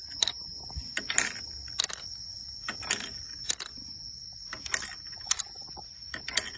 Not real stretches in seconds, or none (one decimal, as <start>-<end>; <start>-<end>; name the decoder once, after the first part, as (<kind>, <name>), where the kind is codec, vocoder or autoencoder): none